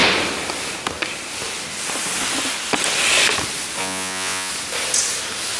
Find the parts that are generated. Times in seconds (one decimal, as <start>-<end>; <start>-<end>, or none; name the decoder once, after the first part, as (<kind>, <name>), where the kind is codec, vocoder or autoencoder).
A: 3.8-4.5 (vocoder, Vocos)